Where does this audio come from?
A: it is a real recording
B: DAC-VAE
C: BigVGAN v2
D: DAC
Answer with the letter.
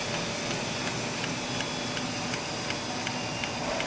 A